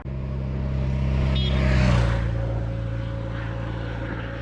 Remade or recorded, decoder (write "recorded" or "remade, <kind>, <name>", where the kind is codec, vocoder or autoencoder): recorded